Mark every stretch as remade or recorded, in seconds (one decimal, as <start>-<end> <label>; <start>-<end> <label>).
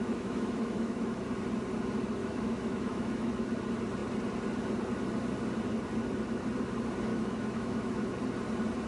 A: 0.0-1.2 remade; 1.2-2.2 recorded; 2.2-3.3 remade; 3.3-7.1 recorded; 7.1-8.0 remade; 8.0-8.9 recorded